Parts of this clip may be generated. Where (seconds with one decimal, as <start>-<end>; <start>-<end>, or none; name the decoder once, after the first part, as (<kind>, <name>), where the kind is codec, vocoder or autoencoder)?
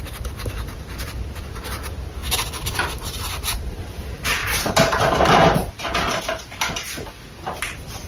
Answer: 2.2-4.0 (vocoder, BigVGAN v2); 4.4-6.2